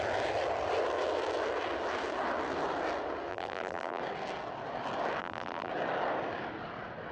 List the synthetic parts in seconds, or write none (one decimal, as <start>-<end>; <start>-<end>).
3.3-4.0; 5.2-5.7